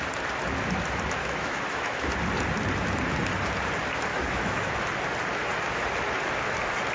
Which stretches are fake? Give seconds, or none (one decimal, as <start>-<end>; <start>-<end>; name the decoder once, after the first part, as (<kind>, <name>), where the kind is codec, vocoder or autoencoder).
1.2-2.1 (autoencoder, DAC-VAE); 4.1-4.8